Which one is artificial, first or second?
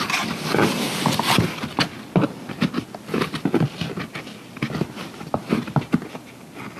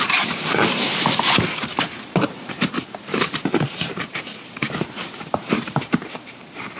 second